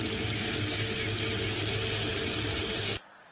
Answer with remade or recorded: recorded